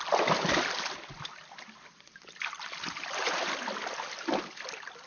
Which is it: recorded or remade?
recorded